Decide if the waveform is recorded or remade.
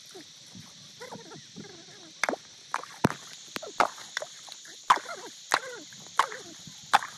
recorded